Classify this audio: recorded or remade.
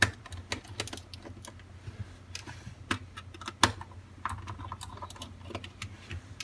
recorded